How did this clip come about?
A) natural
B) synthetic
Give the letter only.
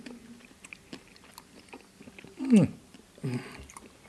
A